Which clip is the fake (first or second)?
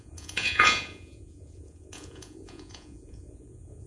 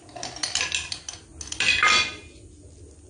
first